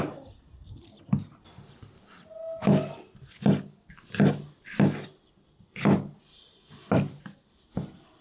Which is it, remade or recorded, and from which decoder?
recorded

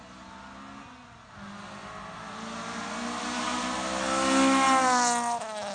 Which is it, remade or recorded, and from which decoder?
recorded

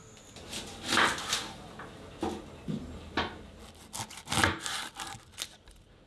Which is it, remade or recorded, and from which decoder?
recorded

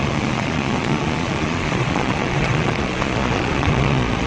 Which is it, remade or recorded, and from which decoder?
remade, vocoder, Vocos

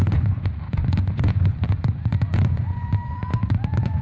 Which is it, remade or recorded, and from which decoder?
remade, vocoder, Vocos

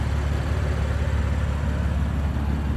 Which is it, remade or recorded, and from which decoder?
recorded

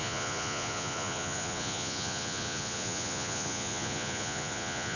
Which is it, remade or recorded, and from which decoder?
remade, vocoder, Vocos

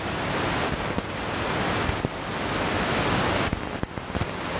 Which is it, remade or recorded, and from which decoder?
recorded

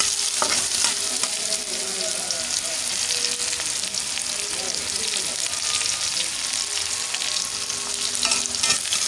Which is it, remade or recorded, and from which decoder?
recorded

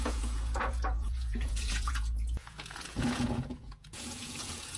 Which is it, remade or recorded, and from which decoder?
remade, vocoder, Vocos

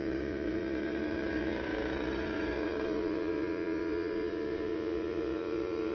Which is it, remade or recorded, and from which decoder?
remade, vocoder, Vocos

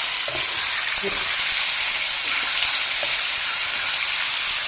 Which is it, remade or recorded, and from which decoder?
recorded